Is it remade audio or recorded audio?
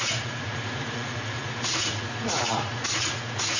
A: remade